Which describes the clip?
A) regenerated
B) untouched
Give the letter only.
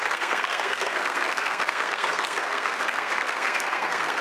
A